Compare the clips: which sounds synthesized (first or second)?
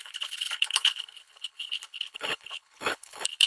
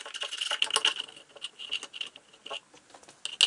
first